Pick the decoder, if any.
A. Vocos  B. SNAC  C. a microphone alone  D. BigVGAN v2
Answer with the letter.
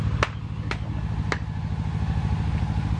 C